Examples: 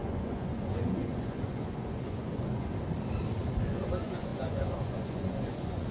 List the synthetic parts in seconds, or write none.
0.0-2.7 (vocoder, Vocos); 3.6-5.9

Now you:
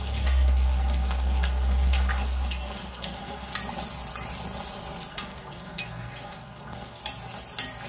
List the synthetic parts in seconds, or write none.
0.0-3.5 (codec, SNAC); 5.1-7.0

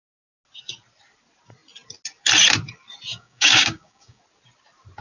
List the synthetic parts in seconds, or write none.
3.1-4.2 (codec, DAC)